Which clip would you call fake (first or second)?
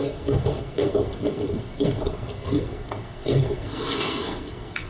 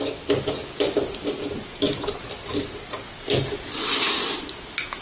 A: first